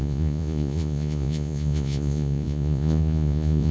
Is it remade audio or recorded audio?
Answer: remade